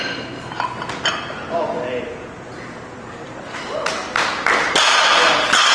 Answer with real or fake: real